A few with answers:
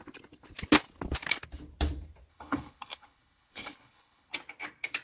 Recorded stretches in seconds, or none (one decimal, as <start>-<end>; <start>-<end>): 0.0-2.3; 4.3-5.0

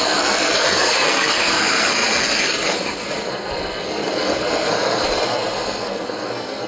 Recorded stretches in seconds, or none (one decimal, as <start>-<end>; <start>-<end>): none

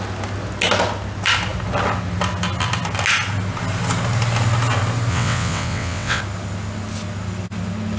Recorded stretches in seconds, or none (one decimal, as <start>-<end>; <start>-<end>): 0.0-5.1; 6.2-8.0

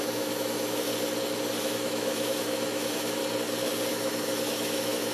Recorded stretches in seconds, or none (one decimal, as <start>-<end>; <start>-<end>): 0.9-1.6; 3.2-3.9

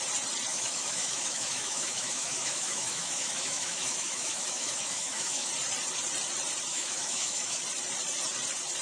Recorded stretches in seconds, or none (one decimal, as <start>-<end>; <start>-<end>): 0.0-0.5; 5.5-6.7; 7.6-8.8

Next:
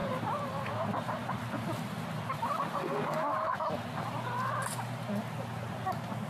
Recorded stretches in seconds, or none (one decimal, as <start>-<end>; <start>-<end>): 0.7-1.2; 2.8-6.3

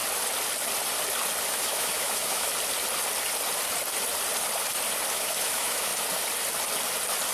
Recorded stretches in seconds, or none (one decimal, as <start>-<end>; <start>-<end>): 0.0-1.5; 2.5-5.1; 5.9-7.3